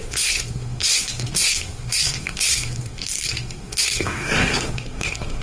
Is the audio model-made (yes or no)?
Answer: yes